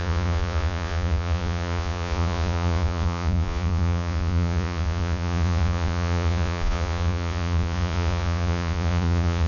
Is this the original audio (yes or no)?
no